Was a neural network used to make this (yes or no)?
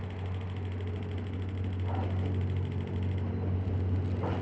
no